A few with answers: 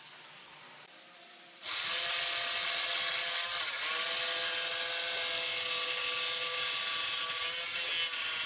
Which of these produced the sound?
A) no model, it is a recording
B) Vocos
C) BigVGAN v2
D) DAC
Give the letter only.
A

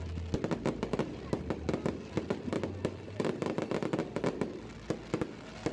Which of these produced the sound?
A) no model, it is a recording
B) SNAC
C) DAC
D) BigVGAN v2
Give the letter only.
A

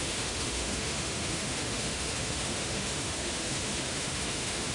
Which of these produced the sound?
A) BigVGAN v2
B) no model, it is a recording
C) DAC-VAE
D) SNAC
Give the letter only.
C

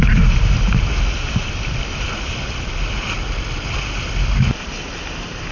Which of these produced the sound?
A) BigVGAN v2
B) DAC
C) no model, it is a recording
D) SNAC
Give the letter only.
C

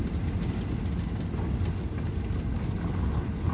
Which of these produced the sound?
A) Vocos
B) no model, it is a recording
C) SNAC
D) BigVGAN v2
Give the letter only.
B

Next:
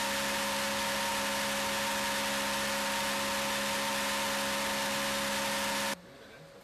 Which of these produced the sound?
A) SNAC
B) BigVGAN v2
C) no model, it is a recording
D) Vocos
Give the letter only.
C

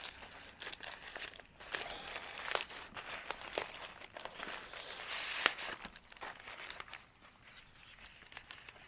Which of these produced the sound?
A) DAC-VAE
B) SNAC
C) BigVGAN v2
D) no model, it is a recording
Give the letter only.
D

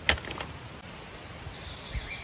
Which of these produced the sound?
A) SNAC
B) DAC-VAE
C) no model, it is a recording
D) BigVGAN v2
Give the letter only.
C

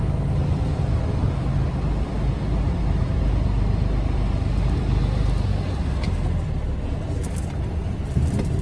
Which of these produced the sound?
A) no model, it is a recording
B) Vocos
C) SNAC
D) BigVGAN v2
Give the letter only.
A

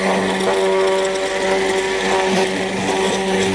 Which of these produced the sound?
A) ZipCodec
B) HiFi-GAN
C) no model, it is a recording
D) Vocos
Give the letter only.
C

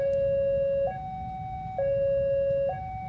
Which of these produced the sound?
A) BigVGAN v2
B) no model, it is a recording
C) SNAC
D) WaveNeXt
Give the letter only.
B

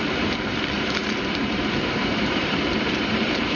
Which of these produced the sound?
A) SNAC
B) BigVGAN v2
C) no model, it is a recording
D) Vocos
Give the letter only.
B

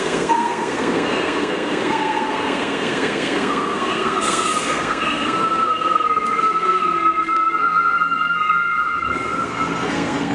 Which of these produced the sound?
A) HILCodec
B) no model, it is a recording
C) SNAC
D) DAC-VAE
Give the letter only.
C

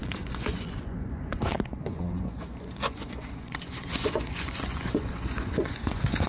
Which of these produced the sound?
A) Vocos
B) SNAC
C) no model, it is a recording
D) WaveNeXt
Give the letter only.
A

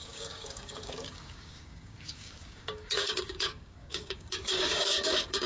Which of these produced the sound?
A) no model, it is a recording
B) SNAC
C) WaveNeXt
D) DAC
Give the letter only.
D